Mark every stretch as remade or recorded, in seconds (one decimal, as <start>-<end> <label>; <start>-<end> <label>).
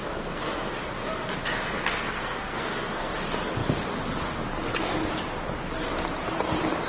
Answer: 0.0-0.7 remade; 0.7-1.8 recorded; 1.8-3.1 remade; 3.1-6.9 recorded